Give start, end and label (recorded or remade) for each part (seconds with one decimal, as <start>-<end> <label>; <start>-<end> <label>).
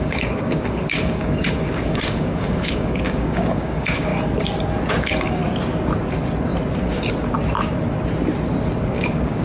0.0-4.1 remade; 4.1-5.0 recorded; 5.0-5.4 remade; 5.4-8.9 recorded; 8.9-9.4 remade